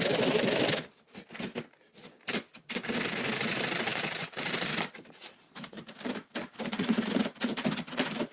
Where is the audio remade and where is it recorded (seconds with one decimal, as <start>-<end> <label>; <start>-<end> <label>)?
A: 0.0-1.5 remade; 1.5-2.7 recorded; 2.7-8.3 remade